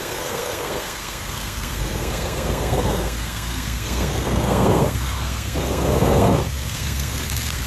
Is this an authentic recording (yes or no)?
no